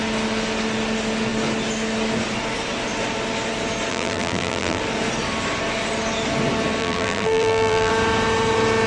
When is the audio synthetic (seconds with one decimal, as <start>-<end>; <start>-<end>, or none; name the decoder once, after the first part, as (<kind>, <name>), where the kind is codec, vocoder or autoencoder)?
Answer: 3.9-4.8 (vocoder, BigVGAN v2); 6.8-7.9